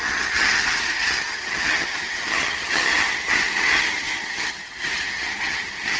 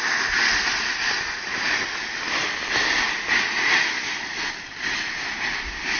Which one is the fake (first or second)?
first